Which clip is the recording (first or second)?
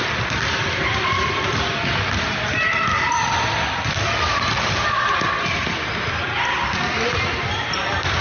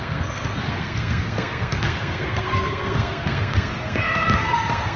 first